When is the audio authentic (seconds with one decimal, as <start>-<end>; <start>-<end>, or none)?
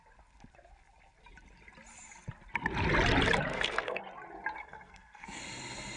0.0-3.5; 4.0-4.6; 5.4-6.0